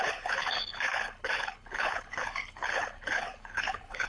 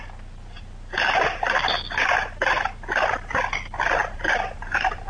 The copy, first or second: first